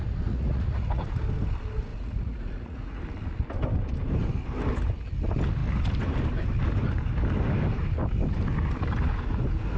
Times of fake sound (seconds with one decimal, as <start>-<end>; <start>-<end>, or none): 0.0-1.1; 1.9-3.0